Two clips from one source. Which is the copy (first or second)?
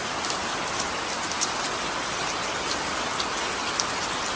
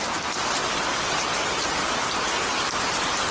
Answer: second